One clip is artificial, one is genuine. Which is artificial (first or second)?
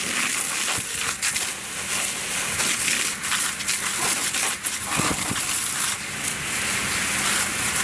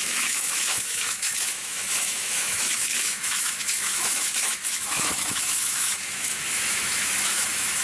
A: second